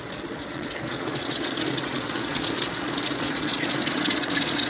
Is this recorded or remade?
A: remade